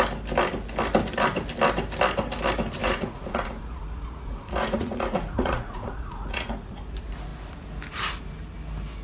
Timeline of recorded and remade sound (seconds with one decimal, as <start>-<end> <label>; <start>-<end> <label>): 0.0-2.8 recorded; 2.8-6.8 remade; 6.8-9.0 recorded